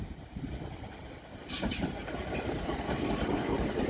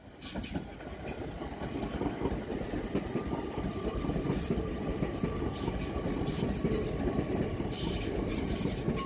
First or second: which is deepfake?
first